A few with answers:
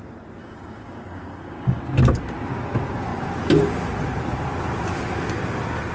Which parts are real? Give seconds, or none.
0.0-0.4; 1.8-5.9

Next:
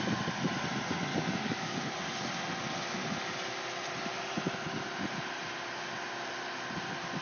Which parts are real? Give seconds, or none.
0.0-1.1; 1.8-7.2

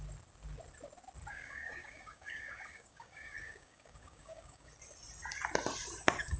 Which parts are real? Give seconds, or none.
0.0-1.3; 4.7-6.4

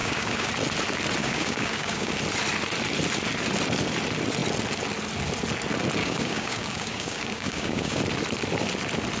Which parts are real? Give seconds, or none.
0.5-1.2; 2.1-6.0; 8.0-9.2

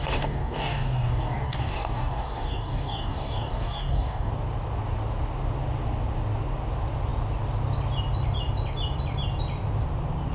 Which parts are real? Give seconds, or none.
4.3-10.3

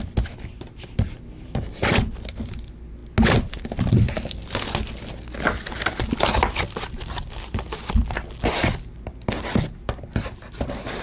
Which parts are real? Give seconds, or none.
0.0-11.0

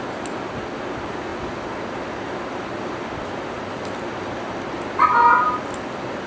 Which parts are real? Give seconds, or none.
0.0-6.3